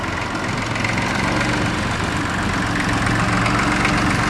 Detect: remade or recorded recorded